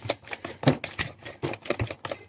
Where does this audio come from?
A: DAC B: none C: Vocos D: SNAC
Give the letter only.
B